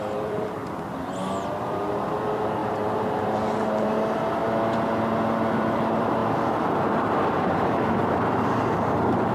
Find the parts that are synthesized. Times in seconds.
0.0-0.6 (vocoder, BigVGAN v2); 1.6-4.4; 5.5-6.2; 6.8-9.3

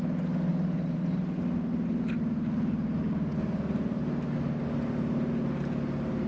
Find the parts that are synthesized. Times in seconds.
0.5-1.2 (vocoder, BigVGAN v2)

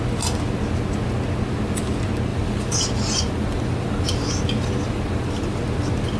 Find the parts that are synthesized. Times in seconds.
2.3-6.2 (vocoder, BigVGAN v2)

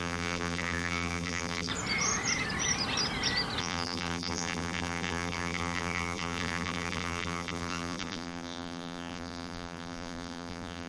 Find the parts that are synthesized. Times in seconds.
0.0-1.7 (vocoder, BigVGAN v2); 3.6-10.9

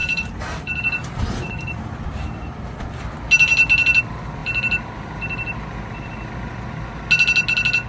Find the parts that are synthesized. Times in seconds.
0.0-3.1 (vocoder, BigVGAN v2); 3.5-4.0

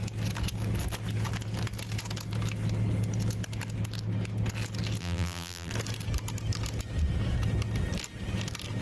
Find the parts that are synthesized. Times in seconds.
5.0-5.7 (vocoder, BigVGAN v2)

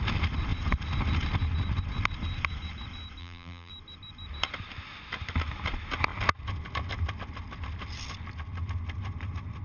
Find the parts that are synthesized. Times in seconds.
3.2-3.7 (vocoder, BigVGAN v2)

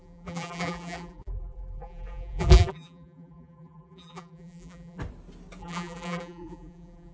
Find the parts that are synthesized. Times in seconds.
0.0-5.0 (vocoder, BigVGAN v2); 5.6-7.1